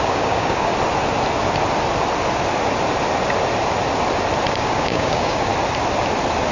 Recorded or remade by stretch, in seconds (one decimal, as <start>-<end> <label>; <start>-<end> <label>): 0.0-0.7 remade; 0.7-4.5 recorded; 4.5-5.5 remade; 5.5-6.5 recorded